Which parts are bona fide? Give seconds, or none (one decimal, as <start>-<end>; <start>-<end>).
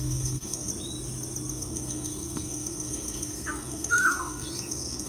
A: 0.7-1.5